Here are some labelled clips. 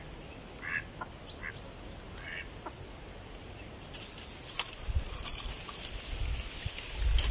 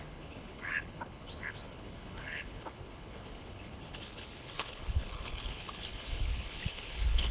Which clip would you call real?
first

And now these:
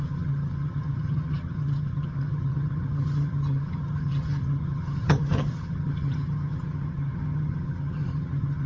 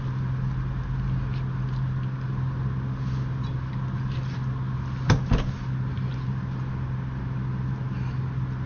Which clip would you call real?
second